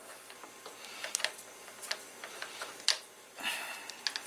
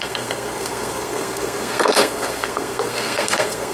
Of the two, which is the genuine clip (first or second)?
first